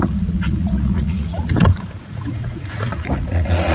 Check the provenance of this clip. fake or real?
fake